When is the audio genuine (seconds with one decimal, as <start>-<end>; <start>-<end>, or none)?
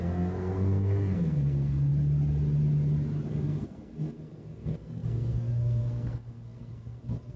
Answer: 1.9-3.3